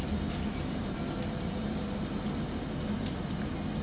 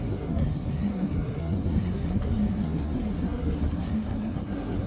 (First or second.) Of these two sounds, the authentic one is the first